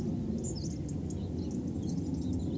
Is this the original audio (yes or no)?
yes